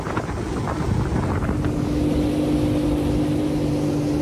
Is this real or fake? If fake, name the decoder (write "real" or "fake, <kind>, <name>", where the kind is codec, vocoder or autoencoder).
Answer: real